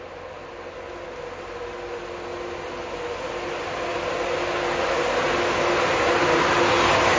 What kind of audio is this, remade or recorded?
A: recorded